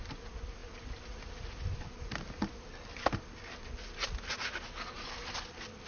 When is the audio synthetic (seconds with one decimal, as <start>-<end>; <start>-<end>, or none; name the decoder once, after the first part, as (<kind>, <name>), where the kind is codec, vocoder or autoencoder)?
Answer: none